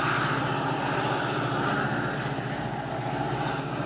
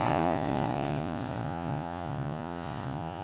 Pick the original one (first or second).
first